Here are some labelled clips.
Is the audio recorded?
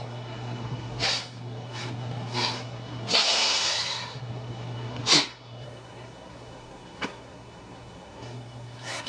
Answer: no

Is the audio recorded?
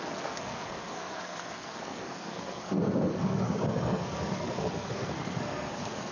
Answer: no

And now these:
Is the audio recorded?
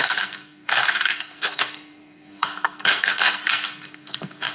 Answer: no